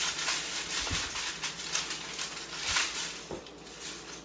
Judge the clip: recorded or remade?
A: recorded